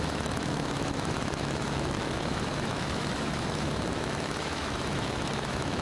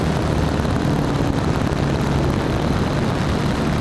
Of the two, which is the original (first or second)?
second